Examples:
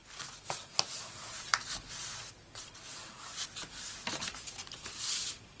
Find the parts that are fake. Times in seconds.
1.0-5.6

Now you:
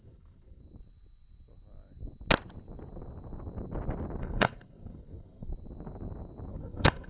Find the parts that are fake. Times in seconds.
0.0-0.6; 4.2-5.5; 6.5-7.1

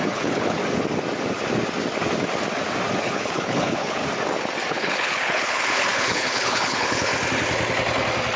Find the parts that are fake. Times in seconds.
0.0-0.6; 3.0-4.0; 4.7-7.1

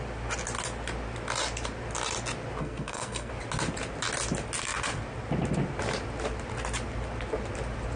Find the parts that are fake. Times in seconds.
2.6-3.3